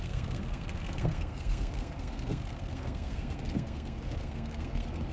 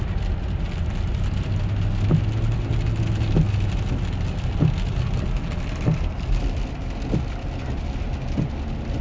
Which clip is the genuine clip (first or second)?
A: second